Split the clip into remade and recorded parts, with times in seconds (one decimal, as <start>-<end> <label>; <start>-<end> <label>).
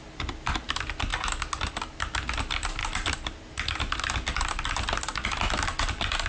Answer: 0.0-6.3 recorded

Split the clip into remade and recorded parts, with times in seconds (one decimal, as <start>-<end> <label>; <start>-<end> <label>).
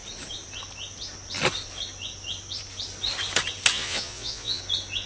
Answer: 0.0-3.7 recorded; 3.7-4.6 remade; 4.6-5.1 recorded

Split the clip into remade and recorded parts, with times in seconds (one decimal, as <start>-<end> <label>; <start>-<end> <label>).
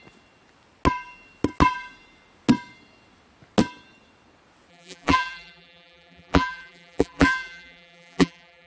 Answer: 0.0-4.7 recorded; 4.7-8.7 remade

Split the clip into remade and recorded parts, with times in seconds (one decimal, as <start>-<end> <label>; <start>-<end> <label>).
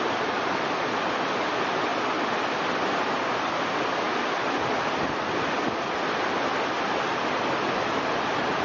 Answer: 0.0-8.6 recorded